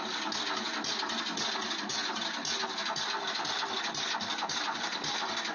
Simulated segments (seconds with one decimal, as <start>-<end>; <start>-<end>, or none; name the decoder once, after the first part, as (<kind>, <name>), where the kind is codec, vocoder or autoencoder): none